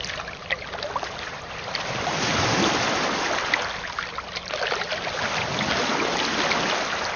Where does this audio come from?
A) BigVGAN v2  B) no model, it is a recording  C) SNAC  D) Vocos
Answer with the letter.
B